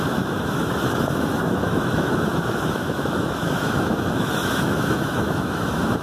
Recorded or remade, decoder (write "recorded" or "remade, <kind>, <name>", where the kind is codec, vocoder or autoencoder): remade, autoencoder, DAC-VAE